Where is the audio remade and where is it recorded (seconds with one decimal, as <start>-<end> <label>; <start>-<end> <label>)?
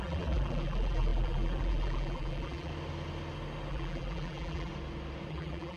0.0-2.7 remade; 2.7-3.7 recorded; 3.7-4.7 remade; 4.7-5.3 recorded; 5.3-5.8 remade